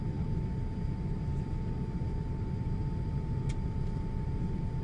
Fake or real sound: real